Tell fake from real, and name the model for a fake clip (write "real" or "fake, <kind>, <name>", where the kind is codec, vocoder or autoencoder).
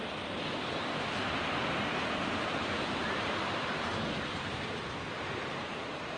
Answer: fake, vocoder, BigVGAN v2